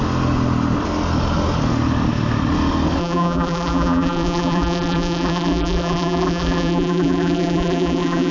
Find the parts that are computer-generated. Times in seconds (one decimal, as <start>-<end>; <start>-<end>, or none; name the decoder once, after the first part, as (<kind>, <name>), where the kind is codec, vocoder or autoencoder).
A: 3.0-8.3 (vocoder, BigVGAN v2)